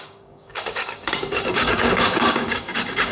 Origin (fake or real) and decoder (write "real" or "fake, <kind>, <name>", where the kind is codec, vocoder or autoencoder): fake, codec, DAC